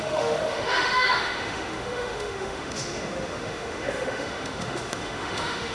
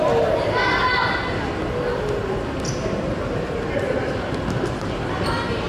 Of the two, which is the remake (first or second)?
first